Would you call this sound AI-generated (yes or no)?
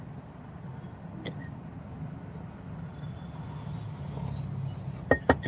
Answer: no